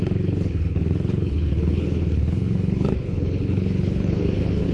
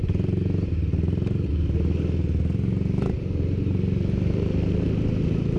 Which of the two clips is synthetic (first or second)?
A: first